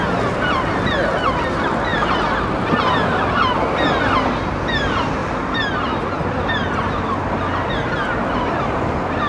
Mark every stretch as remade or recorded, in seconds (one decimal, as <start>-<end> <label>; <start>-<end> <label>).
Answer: 0.0-1.9 recorded; 1.9-3.4 remade; 3.4-9.3 recorded